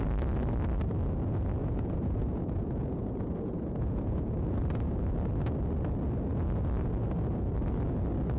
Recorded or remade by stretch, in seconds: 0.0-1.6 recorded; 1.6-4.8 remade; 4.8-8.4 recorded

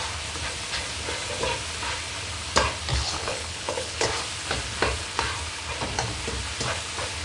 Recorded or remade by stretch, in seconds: 0.0-2.9 recorded; 2.9-4.1 remade; 4.1-7.2 recorded

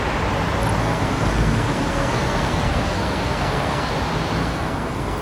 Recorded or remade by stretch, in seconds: 0.0-0.8 recorded; 0.8-3.9 remade; 3.9-4.4 recorded; 4.4-5.2 remade